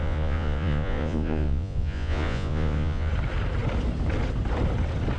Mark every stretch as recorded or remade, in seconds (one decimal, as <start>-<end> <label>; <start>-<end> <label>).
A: 0.0-3.1 remade; 3.1-5.2 recorded